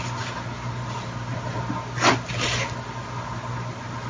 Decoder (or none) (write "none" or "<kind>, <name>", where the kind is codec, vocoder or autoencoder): none